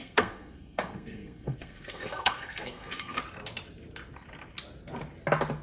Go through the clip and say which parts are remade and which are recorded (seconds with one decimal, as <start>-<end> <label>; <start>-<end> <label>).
0.0-3.2 remade; 3.2-5.6 recorded